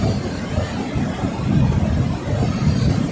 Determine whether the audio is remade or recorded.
recorded